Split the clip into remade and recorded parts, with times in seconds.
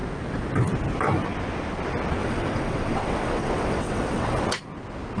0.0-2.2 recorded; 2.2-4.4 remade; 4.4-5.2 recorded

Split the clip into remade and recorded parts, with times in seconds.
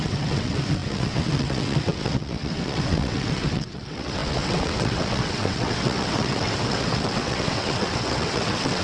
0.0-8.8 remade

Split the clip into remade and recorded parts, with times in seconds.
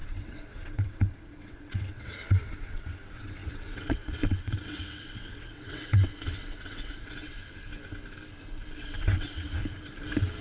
0.0-7.6 remade; 7.6-8.8 recorded; 8.8-9.6 remade; 9.6-10.4 recorded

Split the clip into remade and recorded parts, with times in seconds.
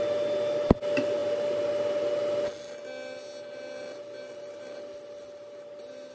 0.0-6.1 recorded